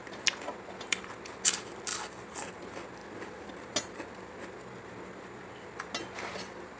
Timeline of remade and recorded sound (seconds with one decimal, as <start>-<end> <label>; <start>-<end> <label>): 0.0-6.8 recorded

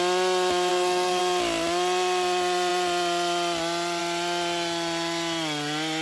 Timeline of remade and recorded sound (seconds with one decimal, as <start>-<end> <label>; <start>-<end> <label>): 0.0-0.7 recorded; 0.7-1.2 remade; 1.2-6.0 recorded

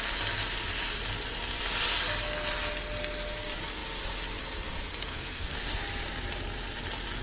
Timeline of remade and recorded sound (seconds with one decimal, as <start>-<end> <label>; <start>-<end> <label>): 0.0-4.9 recorded; 4.9-5.8 remade; 5.8-7.2 recorded

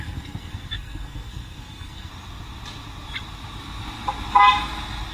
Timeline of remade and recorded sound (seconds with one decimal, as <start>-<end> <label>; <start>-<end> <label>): 0.0-2.1 remade; 2.1-5.1 recorded

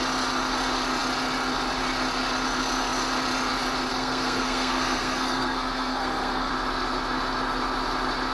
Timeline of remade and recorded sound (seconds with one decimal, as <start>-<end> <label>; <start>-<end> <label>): 0.0-3.9 recorded; 3.9-6.5 remade; 6.5-8.3 recorded

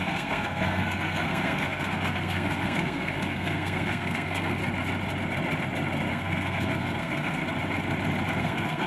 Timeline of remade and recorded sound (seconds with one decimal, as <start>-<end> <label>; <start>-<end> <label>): 0.0-4.6 remade; 4.6-6.1 recorded; 6.1-7.4 remade; 7.4-8.4 recorded; 8.4-8.9 remade

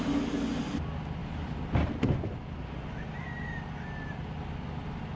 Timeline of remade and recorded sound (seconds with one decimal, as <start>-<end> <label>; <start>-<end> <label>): 0.0-5.2 recorded

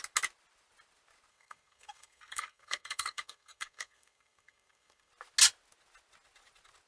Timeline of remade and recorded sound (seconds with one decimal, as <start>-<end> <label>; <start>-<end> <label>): 0.0-1.3 recorded; 1.3-5.1 remade; 5.1-6.9 recorded